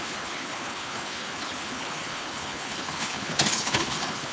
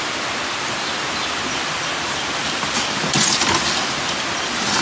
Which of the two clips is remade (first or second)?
first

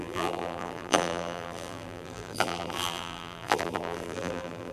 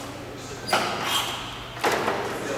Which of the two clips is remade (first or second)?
first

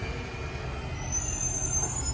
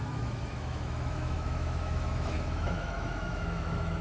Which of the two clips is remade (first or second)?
second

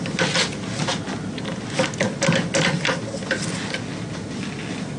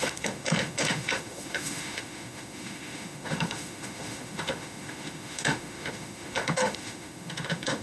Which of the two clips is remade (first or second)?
second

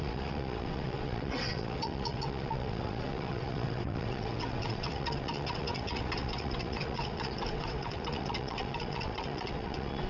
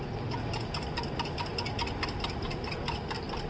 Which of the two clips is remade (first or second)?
first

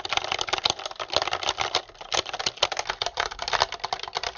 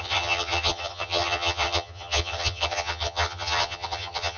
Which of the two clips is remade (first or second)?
second